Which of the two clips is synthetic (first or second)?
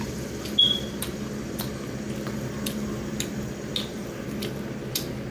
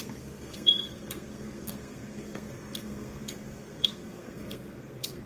second